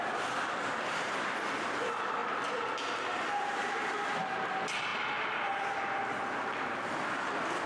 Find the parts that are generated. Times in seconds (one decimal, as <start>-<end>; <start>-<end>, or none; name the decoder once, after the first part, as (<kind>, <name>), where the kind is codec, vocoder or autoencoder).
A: none